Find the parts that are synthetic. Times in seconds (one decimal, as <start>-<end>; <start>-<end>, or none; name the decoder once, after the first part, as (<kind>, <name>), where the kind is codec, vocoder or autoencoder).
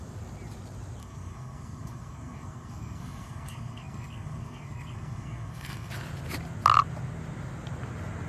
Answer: 1.0-5.9 (codec, SNAC)